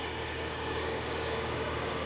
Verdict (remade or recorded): remade